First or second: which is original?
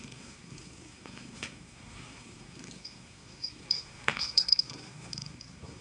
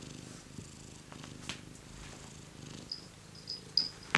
second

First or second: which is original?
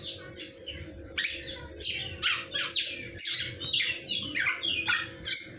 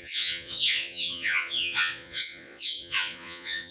first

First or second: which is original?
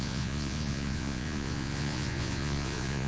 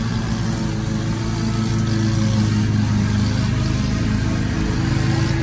second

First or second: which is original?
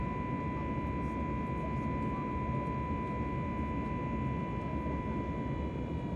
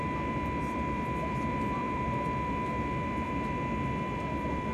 first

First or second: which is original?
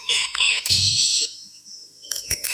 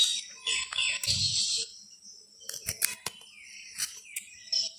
second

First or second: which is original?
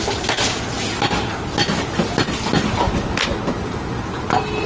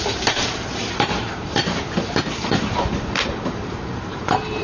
first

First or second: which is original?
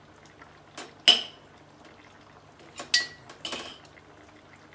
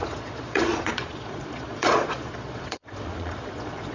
first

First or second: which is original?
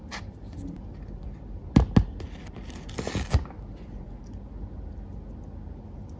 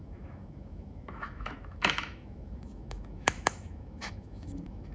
first